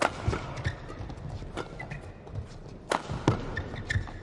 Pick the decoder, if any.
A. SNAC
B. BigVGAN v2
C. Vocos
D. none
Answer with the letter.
D